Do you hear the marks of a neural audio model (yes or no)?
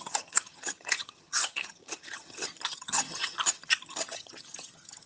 yes